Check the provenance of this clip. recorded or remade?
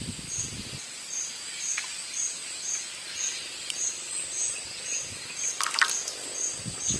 recorded